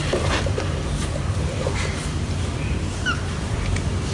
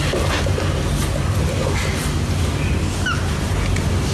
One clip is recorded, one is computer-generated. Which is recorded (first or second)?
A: second